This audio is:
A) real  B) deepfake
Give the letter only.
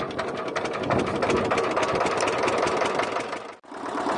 A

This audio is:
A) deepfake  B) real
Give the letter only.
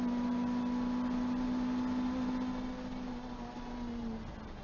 B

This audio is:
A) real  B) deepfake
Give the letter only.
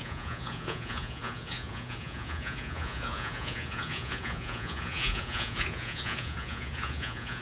B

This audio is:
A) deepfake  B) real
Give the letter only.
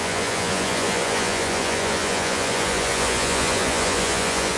A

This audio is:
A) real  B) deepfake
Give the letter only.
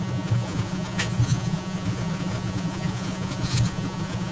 B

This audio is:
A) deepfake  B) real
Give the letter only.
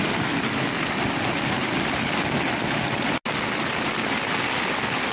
B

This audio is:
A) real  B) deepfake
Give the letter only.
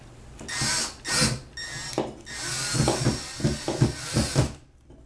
A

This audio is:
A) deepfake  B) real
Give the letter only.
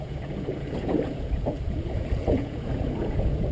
A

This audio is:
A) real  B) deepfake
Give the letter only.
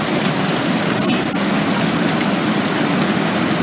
A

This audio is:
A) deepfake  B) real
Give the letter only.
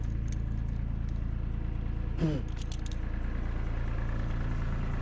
B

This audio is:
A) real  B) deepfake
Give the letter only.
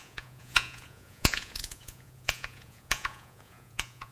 B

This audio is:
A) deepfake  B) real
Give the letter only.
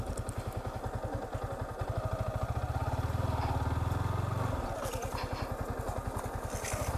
B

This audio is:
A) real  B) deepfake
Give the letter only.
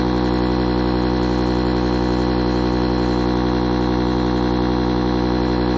A